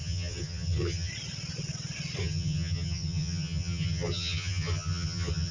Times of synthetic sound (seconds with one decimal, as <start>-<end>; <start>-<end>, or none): 0.0-1.1; 2.2-5.5